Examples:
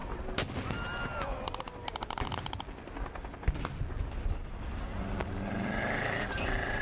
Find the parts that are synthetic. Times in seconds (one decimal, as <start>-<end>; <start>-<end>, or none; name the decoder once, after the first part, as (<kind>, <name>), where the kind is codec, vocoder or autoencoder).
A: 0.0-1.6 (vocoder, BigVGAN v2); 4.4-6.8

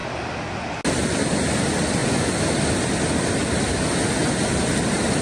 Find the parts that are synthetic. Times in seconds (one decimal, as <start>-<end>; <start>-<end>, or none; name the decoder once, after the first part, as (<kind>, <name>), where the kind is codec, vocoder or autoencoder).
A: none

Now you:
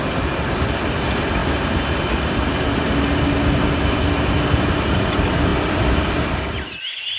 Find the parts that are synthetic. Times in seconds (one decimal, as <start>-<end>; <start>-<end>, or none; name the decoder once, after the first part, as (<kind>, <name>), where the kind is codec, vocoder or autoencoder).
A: none